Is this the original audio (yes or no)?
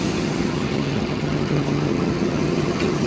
no